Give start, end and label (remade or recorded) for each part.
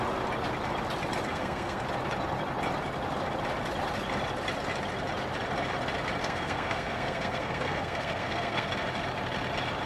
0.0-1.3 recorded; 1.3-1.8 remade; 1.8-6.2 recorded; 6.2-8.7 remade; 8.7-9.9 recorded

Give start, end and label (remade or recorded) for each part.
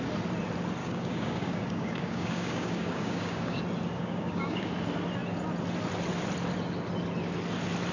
0.0-0.8 recorded; 0.8-3.6 remade; 3.6-4.0 recorded; 4.0-4.7 remade; 4.7-7.9 recorded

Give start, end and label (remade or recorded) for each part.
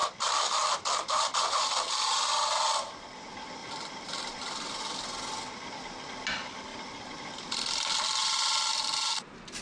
0.0-2.3 remade; 2.3-3.6 recorded; 3.6-4.8 remade; 4.8-8.7 recorded; 8.7-9.6 remade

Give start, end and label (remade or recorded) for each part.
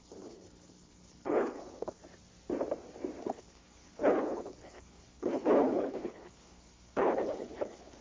0.0-2.0 remade; 2.0-3.2 recorded; 3.2-8.0 remade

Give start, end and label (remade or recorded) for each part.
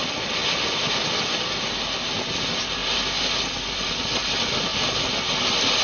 0.0-5.8 recorded